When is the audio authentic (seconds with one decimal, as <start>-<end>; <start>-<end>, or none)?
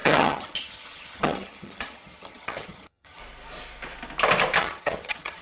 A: 3.2-4.6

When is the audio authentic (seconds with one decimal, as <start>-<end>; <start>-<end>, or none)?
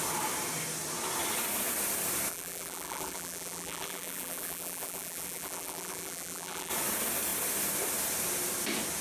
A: 0.0-2.3; 6.7-9.0